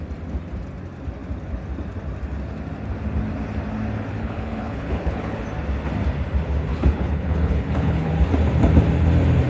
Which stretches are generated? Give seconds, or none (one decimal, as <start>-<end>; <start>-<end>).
4.2-5.4; 6.7-8.1